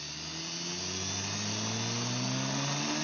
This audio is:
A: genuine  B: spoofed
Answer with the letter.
A